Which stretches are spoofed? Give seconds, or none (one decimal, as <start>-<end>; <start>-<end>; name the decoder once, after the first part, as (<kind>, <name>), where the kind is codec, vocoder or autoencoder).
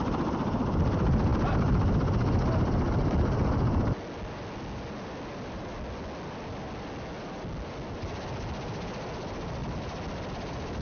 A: none